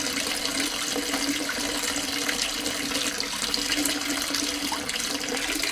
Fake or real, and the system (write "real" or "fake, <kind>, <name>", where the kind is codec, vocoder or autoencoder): real